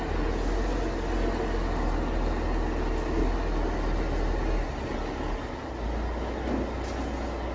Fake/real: real